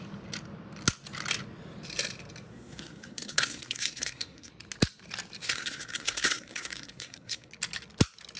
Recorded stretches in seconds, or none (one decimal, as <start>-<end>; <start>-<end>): 0.0-2.5; 4.5-5.4; 7.5-8.4